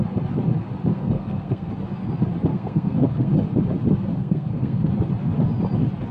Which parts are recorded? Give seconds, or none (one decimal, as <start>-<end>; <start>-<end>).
0.0-0.9; 1.7-2.5; 3.3-4.2; 4.9-6.1